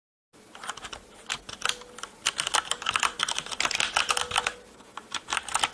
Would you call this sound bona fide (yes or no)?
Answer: yes